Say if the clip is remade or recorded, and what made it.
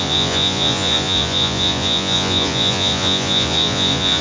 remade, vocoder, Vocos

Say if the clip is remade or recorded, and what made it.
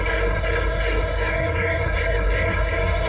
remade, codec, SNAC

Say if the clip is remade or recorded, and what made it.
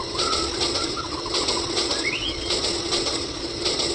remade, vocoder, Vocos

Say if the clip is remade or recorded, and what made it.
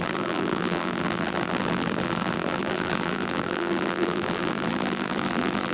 remade, vocoder, BigVGAN v2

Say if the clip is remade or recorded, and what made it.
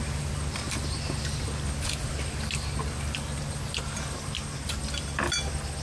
recorded